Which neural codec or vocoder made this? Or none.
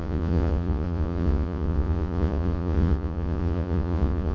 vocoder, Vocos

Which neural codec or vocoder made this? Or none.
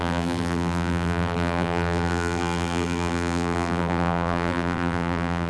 vocoder, BigVGAN v2